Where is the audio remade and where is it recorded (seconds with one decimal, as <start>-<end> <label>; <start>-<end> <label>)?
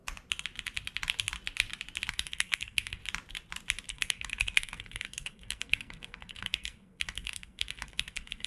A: 0.0-2.1 recorded; 2.1-3.0 remade; 3.0-3.9 recorded; 3.9-8.5 remade